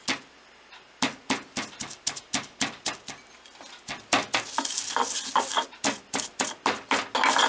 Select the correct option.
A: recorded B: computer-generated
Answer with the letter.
A